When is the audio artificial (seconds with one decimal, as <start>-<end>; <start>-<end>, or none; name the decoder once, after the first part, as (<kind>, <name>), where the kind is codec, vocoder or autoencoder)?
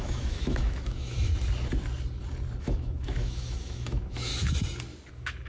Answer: 0.0-1.3 (autoencoder, DAC-VAE); 2.6-4.3; 5.1-5.5